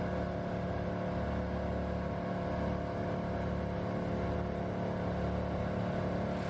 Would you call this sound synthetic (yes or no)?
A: no